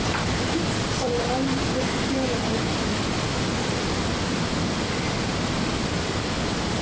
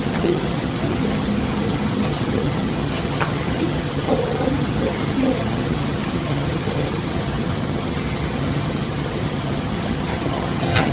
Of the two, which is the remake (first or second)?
second